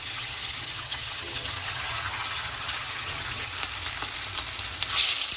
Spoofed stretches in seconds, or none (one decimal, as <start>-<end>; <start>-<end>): 0.0-3.5